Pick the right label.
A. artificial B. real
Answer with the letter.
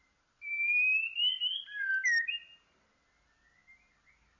B